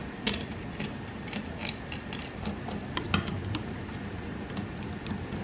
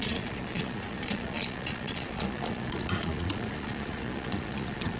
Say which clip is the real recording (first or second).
first